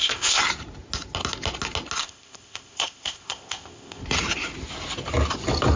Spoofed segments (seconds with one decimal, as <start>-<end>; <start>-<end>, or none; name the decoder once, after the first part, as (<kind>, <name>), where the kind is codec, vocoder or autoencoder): 0.0-0.4 (codec, ZipCodec); 2.0-4.0